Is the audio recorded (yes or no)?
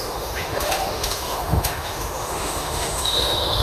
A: no